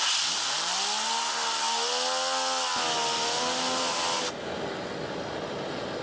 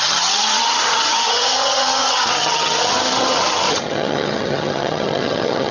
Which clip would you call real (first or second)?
first